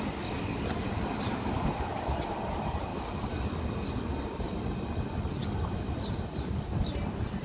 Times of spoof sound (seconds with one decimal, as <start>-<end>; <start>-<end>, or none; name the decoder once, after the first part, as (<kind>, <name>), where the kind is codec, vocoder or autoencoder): none